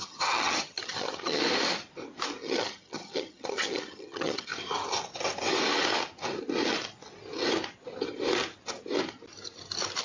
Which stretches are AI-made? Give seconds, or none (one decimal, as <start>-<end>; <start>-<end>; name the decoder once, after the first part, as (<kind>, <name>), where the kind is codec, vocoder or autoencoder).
0.0-1.4 (vocoder, HiFi-GAN); 2.4-4.5